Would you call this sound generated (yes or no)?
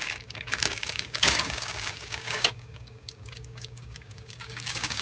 yes